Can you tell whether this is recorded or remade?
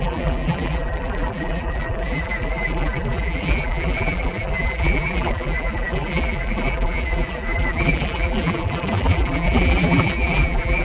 remade